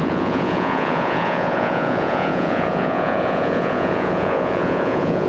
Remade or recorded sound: remade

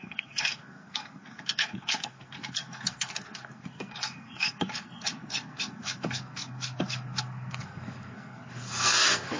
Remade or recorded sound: remade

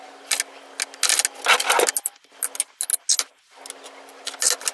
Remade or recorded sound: recorded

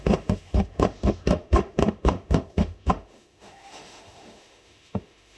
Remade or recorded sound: remade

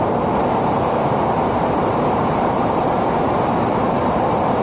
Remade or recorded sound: remade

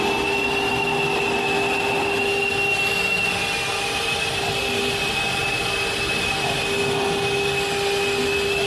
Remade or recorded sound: recorded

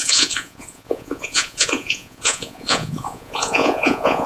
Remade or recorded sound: remade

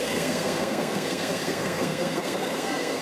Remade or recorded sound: remade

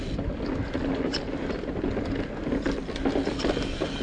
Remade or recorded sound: recorded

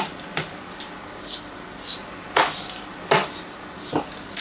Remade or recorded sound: recorded